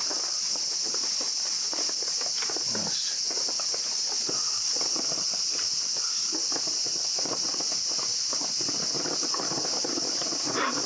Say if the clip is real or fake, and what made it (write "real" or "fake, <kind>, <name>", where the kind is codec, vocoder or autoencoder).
real